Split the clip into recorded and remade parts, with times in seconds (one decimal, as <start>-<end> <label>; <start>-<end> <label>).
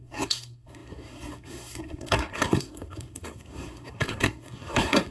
0.0-5.1 remade